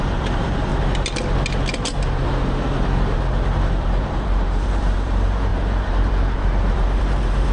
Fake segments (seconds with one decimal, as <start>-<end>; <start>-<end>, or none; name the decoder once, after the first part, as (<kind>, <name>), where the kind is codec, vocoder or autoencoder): 0.0-0.7 (vocoder, BigVGAN v2); 2.1-7.5